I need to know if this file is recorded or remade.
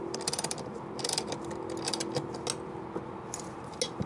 recorded